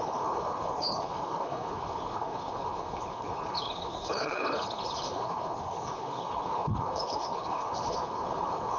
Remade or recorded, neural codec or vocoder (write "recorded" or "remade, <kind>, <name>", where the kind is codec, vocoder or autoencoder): remade, codec, HILCodec